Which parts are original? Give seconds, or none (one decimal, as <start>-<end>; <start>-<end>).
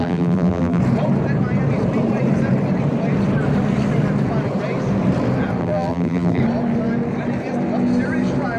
0.8-5.6; 6.4-8.6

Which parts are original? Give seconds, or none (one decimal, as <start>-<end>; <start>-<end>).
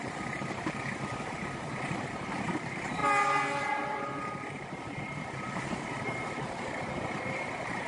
3.0-3.6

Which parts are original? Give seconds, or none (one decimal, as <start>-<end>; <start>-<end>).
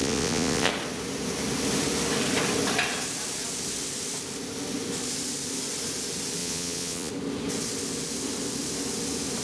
0.7-6.4; 7.1-9.4